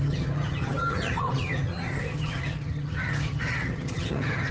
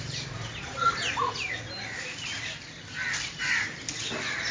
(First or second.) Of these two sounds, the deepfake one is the first